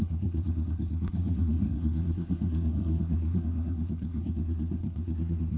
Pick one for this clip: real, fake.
fake